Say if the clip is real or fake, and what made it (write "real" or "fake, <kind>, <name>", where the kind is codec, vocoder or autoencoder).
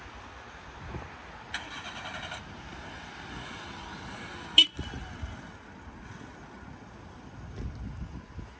real